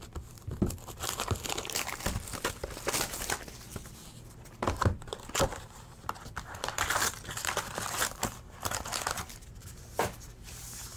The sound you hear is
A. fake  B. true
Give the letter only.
A